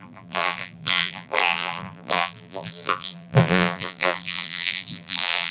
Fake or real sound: fake